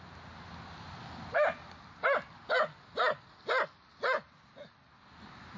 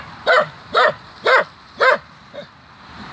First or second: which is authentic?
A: first